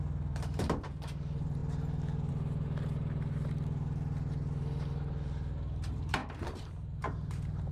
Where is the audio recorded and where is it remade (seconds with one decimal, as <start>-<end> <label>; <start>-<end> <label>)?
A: 0.0-1.6 remade; 1.6-2.3 recorded; 2.3-7.7 remade